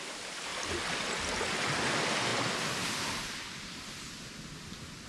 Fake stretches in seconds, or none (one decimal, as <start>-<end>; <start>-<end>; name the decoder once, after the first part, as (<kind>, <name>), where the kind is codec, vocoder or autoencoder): none